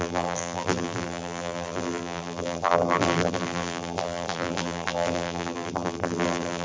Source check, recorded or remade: remade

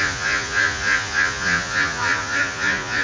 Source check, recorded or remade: remade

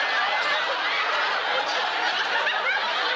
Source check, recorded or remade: recorded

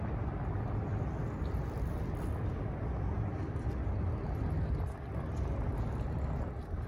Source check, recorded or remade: recorded